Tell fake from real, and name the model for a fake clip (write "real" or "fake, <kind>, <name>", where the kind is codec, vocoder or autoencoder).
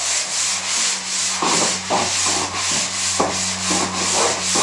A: real